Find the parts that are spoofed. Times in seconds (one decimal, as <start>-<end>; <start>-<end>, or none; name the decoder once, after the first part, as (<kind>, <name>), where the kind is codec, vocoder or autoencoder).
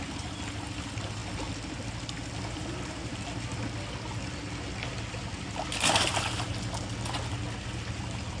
none